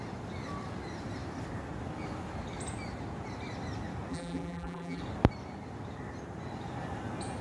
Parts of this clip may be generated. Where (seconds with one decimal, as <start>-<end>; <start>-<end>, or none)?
4.1-5.0